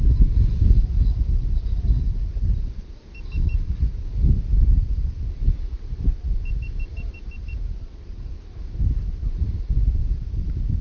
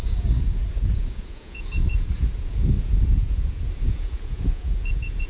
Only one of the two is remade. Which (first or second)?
second